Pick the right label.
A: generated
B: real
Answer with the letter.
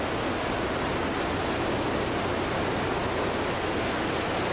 B